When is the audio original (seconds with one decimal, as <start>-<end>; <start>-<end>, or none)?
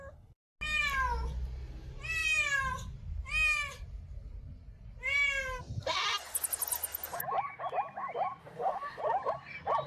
0.0-8.4; 9.0-9.9